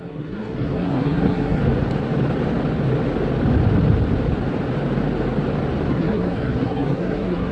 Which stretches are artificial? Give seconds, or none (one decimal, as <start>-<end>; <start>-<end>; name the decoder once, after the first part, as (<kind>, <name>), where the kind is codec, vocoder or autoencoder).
0.0-1.6 (codec, SNAC); 5.9-7.5